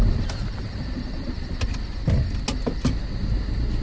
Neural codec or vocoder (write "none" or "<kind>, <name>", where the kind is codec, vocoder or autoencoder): none